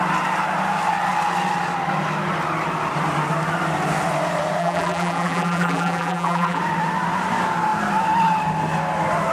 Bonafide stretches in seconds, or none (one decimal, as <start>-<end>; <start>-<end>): 0.0-4.6; 6.6-9.3